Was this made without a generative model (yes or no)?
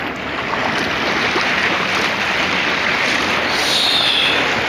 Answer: yes